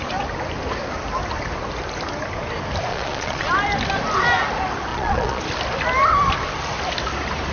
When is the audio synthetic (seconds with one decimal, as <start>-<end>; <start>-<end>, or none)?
2.9-3.5; 4.9-5.4